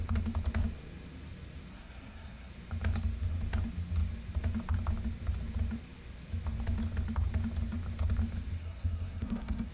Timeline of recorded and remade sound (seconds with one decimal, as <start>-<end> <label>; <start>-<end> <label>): 0.0-1.7 recorded; 1.7-2.5 remade; 2.5-8.6 recorded; 8.6-9.7 remade